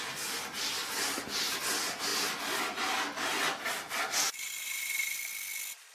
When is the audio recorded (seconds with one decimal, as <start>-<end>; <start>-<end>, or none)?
0.0-5.9